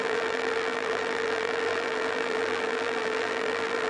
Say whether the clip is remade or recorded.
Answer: remade